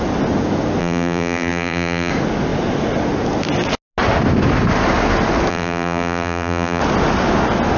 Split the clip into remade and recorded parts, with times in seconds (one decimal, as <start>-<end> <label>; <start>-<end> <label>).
0.0-0.8 recorded; 0.8-2.1 remade; 2.1-5.5 recorded; 5.5-6.8 remade; 6.8-7.8 recorded